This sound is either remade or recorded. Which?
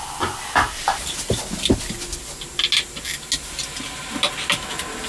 recorded